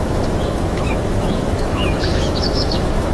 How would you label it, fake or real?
fake